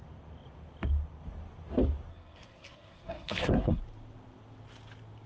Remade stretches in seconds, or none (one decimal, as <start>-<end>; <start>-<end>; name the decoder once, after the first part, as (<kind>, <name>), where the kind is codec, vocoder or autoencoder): 2.1-3.8 (codec, SNAC)